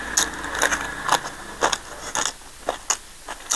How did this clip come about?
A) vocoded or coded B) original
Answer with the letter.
B